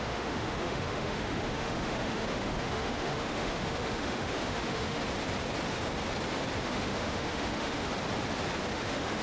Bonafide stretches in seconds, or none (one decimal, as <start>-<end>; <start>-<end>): 5.0-6.6; 7.9-8.7